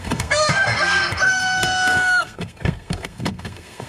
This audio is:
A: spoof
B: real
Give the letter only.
A